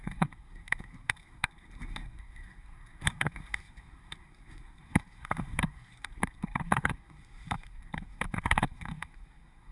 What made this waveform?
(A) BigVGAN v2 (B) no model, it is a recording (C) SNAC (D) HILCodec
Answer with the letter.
C